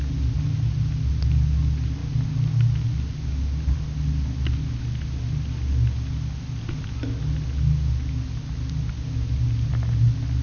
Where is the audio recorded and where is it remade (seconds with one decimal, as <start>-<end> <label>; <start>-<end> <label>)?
0.0-10.4 recorded